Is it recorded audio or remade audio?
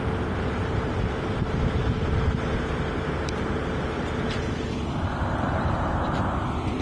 recorded